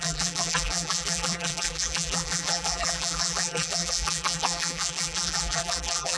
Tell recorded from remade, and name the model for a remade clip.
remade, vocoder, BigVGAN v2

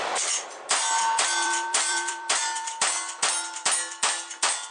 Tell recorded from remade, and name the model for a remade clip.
remade, vocoder, BigVGAN v2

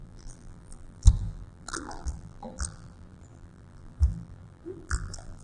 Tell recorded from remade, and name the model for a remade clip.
remade, vocoder, BigVGAN v2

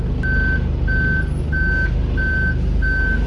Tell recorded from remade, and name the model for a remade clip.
recorded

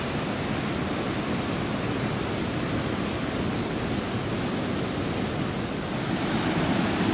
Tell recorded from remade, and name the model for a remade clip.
recorded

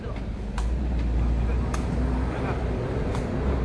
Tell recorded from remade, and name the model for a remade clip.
recorded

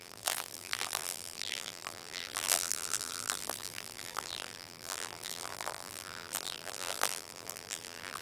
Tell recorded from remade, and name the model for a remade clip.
remade, vocoder, BigVGAN v2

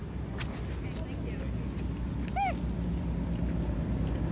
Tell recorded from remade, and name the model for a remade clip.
recorded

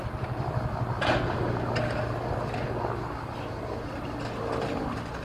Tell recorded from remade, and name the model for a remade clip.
recorded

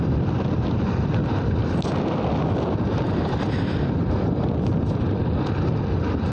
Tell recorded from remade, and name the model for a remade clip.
remade, vocoder, BigVGAN v2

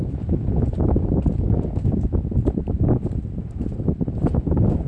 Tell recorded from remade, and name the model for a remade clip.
recorded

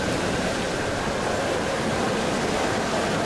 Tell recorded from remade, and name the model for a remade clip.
remade, vocoder, BigVGAN v2